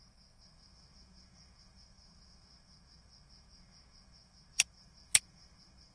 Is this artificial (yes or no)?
yes